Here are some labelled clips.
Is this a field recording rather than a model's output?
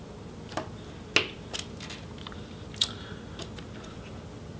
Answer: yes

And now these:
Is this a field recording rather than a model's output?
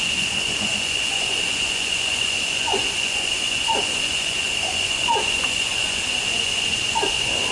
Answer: no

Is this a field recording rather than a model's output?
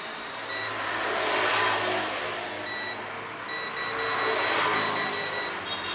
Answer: yes